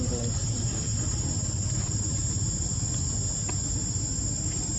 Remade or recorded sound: recorded